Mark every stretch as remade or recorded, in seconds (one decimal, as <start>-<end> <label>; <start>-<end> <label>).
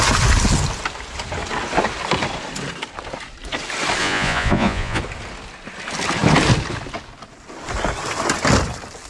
0.0-4.0 recorded; 4.0-5.0 remade; 5.0-9.1 recorded